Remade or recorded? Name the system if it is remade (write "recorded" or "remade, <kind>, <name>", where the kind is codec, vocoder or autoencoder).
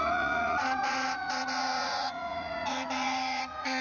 remade, vocoder, Vocos